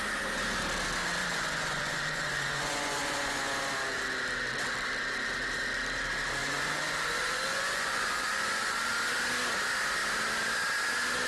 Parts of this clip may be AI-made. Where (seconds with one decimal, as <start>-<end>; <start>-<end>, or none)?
1.2-3.7; 6.4-8.9